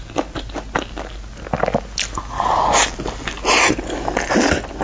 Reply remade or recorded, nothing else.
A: recorded